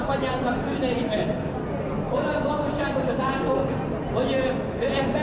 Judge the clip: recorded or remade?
recorded